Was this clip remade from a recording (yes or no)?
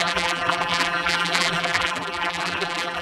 yes